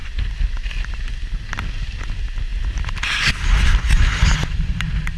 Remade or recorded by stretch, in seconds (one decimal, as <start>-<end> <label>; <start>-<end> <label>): 0.0-5.2 recorded